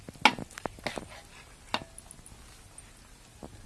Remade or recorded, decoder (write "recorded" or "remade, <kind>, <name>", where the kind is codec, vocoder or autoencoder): recorded